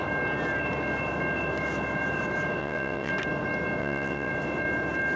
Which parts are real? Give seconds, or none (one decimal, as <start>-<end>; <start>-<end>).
0.0-2.6; 3.1-3.8; 4.3-5.2